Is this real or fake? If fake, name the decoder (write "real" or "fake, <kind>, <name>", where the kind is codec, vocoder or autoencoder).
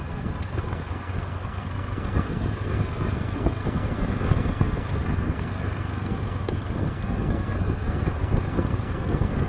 fake, codec, SNAC